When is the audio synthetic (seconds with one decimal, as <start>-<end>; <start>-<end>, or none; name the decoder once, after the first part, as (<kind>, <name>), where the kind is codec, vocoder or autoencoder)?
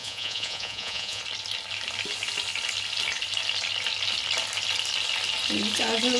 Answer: 0.0-1.2 (vocoder, Vocos)